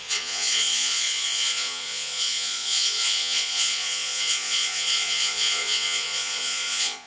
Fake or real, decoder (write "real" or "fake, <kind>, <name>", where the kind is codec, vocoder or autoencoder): fake, vocoder, Vocos